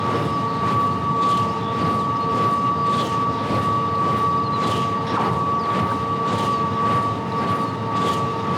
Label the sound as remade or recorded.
recorded